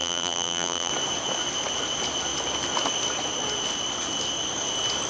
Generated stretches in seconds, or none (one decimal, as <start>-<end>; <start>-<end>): 0.0-0.9